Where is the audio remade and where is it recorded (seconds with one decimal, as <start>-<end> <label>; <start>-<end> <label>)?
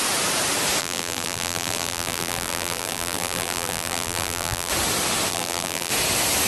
0.0-0.8 recorded; 0.8-4.7 remade; 4.7-5.3 recorded; 5.3-5.9 remade; 5.9-6.5 recorded